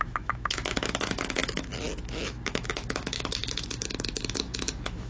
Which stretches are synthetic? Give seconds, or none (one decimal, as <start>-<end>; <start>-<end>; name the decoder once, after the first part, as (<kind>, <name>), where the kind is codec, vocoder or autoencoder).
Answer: 0.0-5.1 (autoencoder, DAC-VAE)